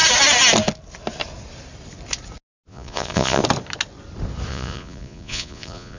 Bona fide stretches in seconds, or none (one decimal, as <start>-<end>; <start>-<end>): 0.0-2.7; 3.4-4.5